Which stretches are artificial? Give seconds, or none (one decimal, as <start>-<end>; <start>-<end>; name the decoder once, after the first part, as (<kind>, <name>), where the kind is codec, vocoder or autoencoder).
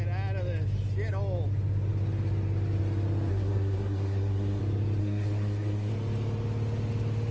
3.3-4.6 (codec, SNAC); 5.0-5.9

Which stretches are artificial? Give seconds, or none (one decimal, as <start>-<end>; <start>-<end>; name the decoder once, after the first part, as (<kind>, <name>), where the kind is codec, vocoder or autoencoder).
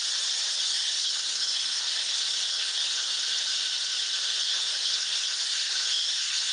0.6-2.1 (codec, SNAC); 2.5-3.1; 4.4-6.5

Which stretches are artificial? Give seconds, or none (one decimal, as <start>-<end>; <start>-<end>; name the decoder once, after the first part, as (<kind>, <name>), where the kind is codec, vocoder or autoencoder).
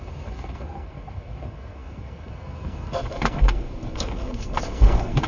0.0-5.3 (codec, SNAC)